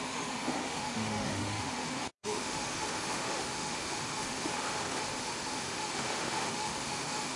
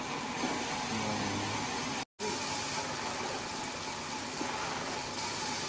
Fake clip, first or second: first